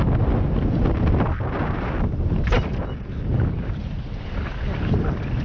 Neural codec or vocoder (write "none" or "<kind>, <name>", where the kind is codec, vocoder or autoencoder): none